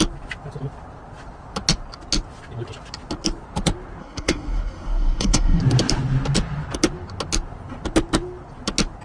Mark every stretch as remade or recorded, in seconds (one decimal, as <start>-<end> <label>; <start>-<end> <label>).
0.0-4.0 recorded; 4.0-5.6 remade; 5.6-9.0 recorded